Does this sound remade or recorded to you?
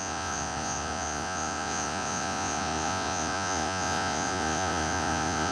remade